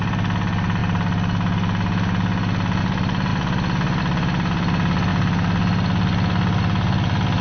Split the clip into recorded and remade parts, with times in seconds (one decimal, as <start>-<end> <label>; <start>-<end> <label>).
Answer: 0.0-7.4 recorded